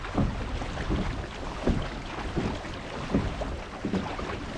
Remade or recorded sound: recorded